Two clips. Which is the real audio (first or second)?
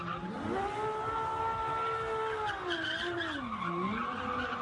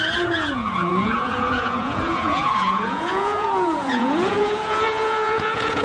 first